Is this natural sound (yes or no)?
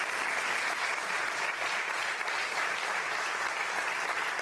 yes